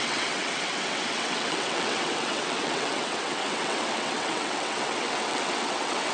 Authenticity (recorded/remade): remade